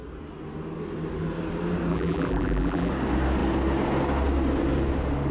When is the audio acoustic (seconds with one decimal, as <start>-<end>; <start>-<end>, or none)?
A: 0.0-1.9; 2.9-5.3